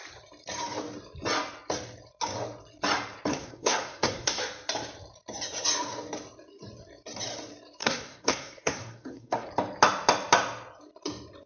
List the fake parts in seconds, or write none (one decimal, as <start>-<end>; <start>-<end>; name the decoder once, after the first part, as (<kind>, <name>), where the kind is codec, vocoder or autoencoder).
3.3-4.4 (codec, SNAC); 7.8-9.5